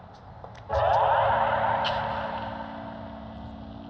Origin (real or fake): real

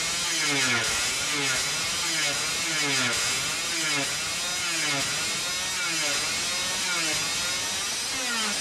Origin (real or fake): real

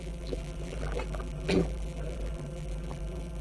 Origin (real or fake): fake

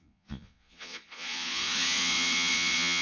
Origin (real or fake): fake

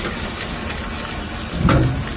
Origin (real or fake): real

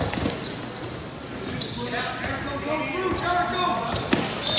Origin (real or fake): real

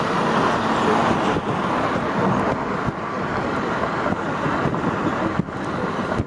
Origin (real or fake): real